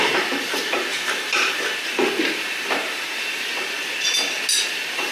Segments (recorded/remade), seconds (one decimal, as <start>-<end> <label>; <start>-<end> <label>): 0.0-0.9 recorded; 0.9-1.6 remade; 1.6-2.4 recorded; 2.4-3.5 remade; 3.5-5.1 recorded